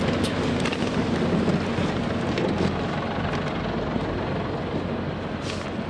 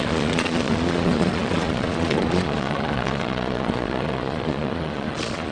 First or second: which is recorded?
first